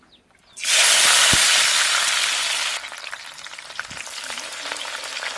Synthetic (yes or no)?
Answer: no